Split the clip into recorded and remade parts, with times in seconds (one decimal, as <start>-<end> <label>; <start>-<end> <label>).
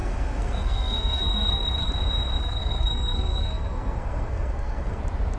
0.0-1.9 remade; 1.9-2.4 recorded; 2.4-5.0 remade; 5.0-5.4 recorded